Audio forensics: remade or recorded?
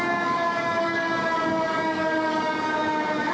remade